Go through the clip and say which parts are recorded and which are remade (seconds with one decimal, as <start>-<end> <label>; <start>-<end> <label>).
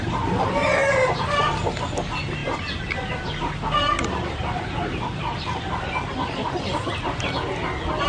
0.0-8.1 recorded